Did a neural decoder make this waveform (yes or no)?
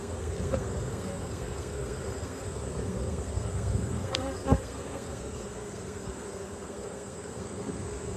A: yes